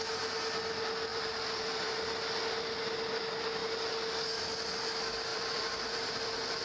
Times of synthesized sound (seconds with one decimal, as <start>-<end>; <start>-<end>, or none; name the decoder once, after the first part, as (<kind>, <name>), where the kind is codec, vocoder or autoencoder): 1.1-2.0 (vocoder, BigVGAN v2); 5.3-6.1

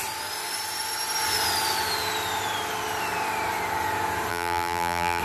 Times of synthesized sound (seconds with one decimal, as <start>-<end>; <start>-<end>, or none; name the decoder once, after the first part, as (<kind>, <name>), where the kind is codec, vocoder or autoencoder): 4.3-5.2 (vocoder, BigVGAN v2)

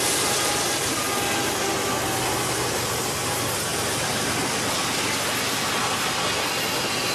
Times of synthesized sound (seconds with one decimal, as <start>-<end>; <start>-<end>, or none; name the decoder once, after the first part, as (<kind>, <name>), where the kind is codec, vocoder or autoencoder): none

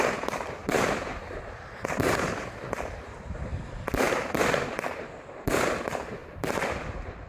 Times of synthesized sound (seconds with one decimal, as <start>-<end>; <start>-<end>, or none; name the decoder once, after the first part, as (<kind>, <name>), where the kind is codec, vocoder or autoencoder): 0.6-1.4 (vocoder, BigVGAN v2); 3.5-4.1; 6.2-7.3

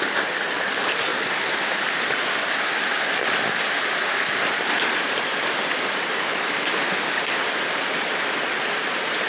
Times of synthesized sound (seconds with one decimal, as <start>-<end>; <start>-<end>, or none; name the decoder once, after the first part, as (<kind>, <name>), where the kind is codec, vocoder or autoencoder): 0.0-1.1 (vocoder, BigVGAN v2); 2.8-9.3

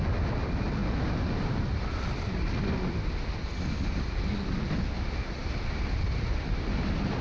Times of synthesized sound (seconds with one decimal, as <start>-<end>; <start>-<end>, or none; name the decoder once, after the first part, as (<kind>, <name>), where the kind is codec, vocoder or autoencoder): none